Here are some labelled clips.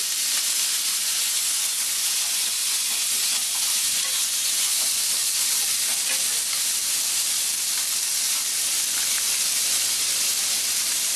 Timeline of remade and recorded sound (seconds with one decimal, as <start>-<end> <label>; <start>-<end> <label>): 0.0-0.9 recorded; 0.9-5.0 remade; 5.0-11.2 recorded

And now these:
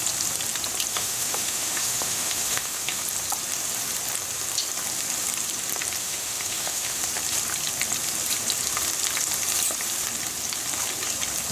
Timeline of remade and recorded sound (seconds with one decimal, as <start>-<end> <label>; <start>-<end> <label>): 0.0-0.9 recorded; 0.9-3.0 remade; 3.0-6.0 recorded; 6.0-7.0 remade; 7.0-11.5 recorded

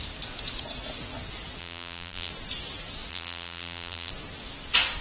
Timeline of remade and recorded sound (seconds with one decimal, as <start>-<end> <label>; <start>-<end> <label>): 0.0-1.6 recorded; 1.6-2.3 remade; 2.3-3.1 recorded; 3.1-4.1 remade; 4.1-5.0 recorded